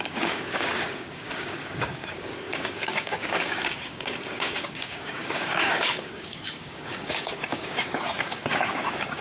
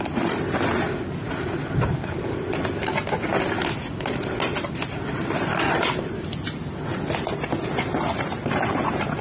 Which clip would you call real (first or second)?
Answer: second